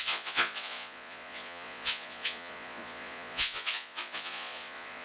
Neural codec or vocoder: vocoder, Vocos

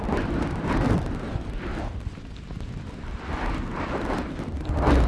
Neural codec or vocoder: none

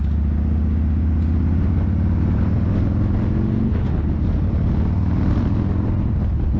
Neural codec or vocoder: none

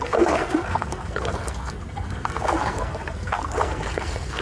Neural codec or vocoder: codec, SNAC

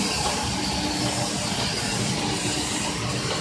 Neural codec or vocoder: none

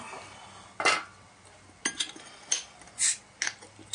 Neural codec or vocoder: none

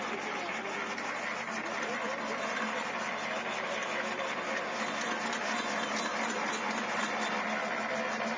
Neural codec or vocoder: none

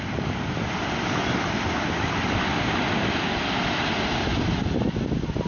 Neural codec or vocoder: none